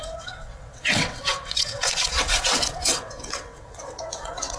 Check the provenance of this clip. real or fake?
fake